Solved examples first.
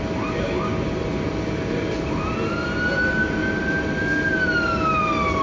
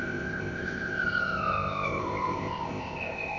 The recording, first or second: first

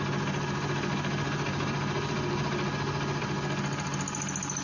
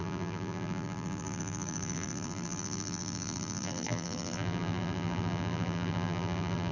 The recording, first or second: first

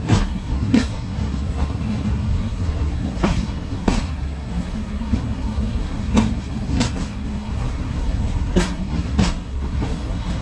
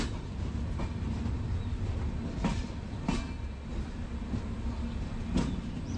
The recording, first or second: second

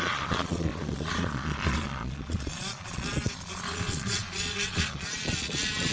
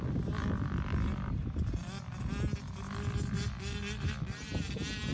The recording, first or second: second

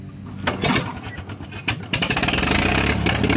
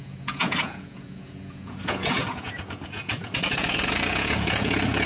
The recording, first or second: first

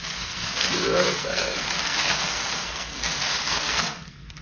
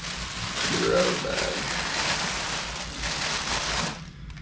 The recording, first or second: second